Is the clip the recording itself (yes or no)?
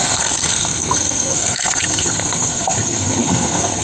no